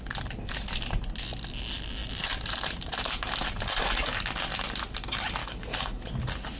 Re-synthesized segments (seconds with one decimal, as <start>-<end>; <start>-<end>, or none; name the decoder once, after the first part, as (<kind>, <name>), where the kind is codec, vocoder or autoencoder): 5.4-6.0 (autoencoder, DAC-VAE)